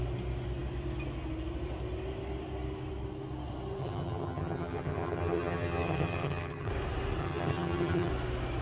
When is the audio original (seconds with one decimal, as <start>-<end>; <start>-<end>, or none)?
0.0-3.8; 6.7-7.2; 8.1-8.6